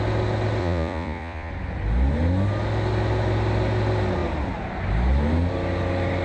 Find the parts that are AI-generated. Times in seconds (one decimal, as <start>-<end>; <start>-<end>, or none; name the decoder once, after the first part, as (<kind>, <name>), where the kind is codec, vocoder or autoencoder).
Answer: 0.6-1.5 (vocoder, Vocos)